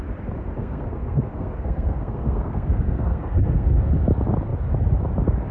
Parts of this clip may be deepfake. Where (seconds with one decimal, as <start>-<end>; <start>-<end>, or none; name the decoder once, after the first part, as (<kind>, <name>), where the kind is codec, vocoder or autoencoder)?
0.6-3.9 (codec, SNAC)